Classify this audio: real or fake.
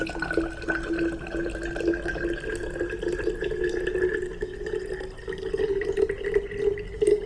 real